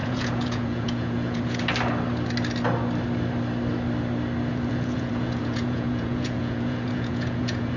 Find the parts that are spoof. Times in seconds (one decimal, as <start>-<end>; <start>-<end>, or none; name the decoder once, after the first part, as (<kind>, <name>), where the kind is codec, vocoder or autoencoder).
0.0-1.6 (vocoder, Vocos); 4.5-7.8